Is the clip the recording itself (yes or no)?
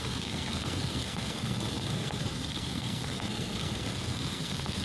no